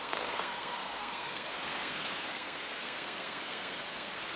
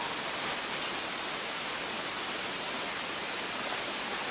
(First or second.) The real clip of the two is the second